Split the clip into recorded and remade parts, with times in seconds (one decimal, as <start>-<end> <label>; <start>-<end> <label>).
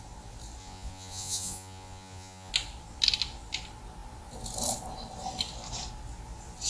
0.0-0.6 recorded; 0.6-2.5 remade; 2.5-6.7 recorded